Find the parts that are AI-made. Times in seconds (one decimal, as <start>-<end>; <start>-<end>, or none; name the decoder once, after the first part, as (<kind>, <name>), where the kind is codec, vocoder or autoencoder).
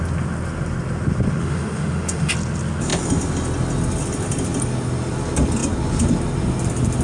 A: 1.4-2.3 (autoencoder, DAC-VAE)